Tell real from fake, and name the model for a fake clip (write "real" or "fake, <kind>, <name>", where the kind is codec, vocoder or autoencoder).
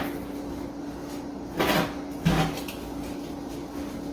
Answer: real